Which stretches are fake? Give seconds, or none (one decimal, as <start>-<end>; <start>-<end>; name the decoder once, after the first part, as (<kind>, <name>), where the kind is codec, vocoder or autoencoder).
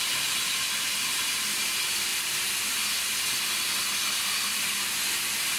none